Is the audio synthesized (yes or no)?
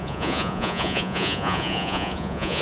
yes